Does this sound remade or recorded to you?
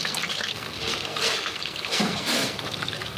remade